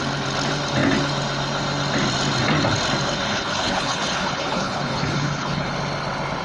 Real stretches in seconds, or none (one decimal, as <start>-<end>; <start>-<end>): 0.0-3.3; 5.7-6.4